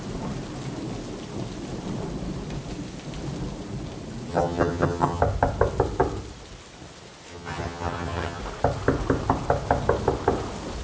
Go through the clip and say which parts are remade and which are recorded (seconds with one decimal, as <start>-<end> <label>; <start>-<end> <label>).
0.0-4.3 recorded; 4.3-5.2 remade; 5.2-7.3 recorded; 7.3-8.4 remade; 8.4-10.8 recorded